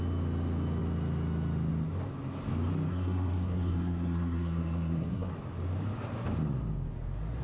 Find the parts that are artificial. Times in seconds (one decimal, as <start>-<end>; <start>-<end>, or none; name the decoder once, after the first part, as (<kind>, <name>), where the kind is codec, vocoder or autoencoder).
2.9-5.3 (codec, SNAC)